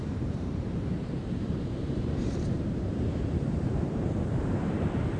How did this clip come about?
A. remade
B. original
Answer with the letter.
A